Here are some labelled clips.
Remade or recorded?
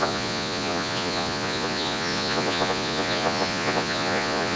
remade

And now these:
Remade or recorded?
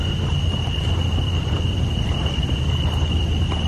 recorded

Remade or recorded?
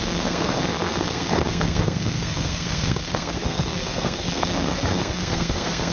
remade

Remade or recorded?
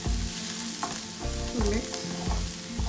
recorded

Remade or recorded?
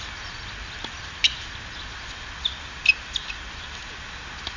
recorded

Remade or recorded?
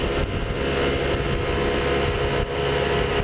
recorded